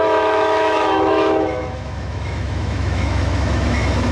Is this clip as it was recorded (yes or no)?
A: no